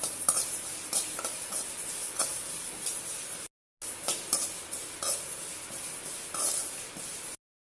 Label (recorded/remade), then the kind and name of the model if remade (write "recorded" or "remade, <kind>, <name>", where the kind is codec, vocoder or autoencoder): recorded